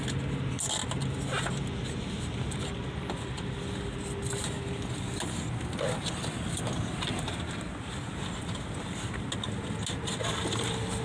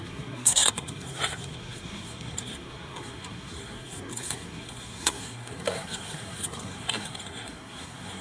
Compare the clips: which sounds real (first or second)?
first